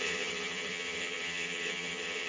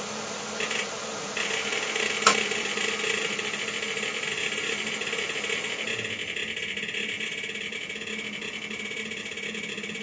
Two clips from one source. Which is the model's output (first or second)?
first